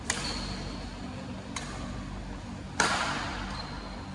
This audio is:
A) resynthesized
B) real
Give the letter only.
B